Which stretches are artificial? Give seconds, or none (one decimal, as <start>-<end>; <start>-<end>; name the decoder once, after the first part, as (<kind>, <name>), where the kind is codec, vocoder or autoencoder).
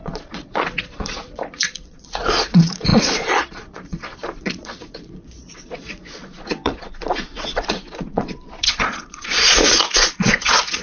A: 0.0-10.8 (vocoder, Vocos)